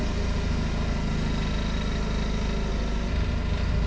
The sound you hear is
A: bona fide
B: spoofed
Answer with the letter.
A